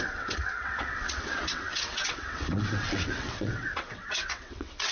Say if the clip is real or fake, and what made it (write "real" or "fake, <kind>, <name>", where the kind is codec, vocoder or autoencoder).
fake, vocoder, WaveNeXt